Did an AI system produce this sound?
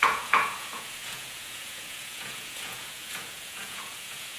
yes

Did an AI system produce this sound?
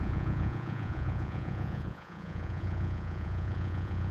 yes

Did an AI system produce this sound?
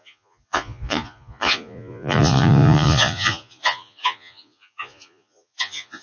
yes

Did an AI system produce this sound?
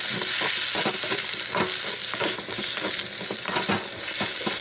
no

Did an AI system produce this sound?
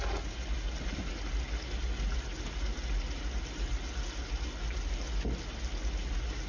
no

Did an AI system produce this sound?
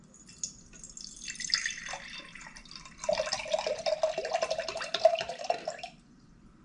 no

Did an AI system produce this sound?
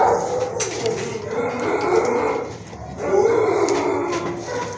no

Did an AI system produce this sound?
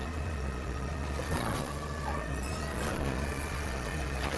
yes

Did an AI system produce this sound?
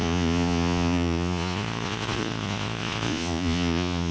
yes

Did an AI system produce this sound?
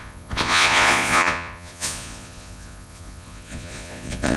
yes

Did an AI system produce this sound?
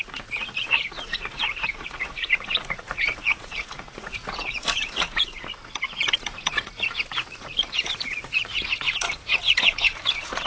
yes